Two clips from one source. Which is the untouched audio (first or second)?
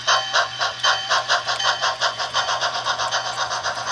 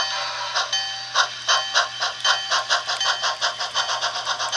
second